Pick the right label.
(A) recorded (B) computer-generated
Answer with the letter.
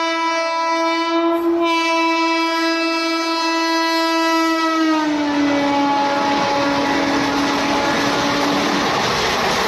A